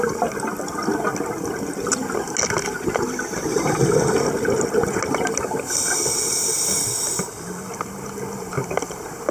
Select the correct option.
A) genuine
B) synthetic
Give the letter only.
A